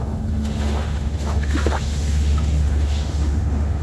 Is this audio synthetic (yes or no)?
yes